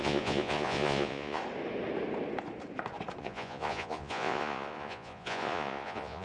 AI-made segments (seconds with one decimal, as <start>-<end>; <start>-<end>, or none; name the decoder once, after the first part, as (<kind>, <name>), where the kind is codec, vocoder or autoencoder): 0.0-1.4 (vocoder, Vocos); 3.2-6.2

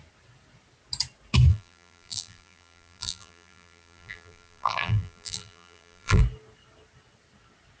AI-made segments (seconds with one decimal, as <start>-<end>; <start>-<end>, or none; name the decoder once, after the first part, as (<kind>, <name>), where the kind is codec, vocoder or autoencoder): 1.5-6.2 (vocoder, BigVGAN v2)